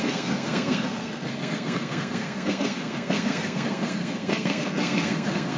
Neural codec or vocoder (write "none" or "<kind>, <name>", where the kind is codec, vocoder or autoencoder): codec, SNAC